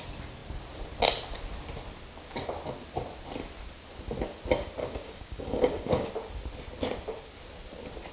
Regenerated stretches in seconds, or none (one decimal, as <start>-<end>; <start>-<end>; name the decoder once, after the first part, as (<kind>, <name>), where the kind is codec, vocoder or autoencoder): 4.8-6.1 (codec, DAC)